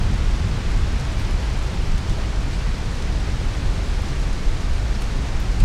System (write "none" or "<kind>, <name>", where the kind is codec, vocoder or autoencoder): none